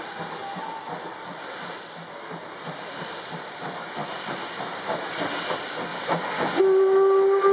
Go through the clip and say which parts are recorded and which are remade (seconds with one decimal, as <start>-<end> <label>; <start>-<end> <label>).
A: 0.0-5.9 recorded; 5.9-6.6 remade; 6.6-7.5 recorded